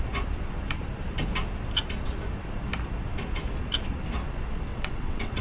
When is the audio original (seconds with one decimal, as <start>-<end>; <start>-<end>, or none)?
0.0-4.7